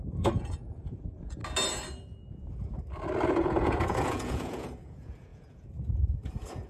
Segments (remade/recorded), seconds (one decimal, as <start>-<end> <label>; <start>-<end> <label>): 0.0-1.4 remade; 1.4-3.3 recorded; 3.3-6.7 remade